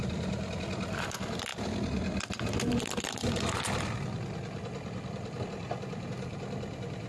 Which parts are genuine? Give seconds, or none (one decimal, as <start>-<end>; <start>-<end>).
0.0-7.1